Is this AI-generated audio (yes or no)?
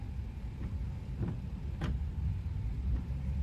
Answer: no